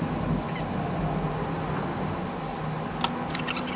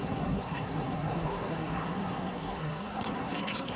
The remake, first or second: second